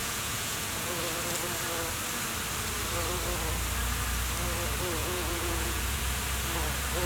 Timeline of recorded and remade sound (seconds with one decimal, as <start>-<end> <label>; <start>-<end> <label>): 0.0-1.0 remade; 1.0-5.0 recorded; 5.0-6.0 remade; 6.0-7.1 recorded